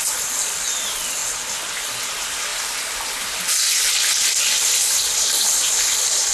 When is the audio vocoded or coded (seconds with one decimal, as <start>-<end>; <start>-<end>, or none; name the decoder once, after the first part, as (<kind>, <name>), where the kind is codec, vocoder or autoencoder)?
2.5-5.8 (vocoder, BigVGAN v2)